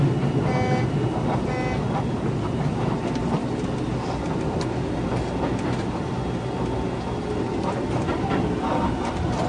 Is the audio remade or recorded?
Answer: recorded